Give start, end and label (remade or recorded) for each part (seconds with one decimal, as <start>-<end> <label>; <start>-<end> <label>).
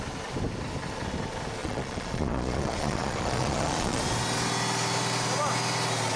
0.0-1.6 recorded; 1.6-4.0 remade; 4.0-6.2 recorded